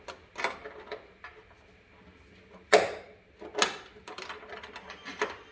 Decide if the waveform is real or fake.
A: real